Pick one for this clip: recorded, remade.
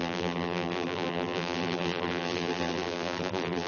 remade